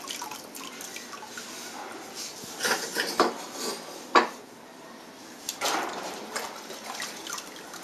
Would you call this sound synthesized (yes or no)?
no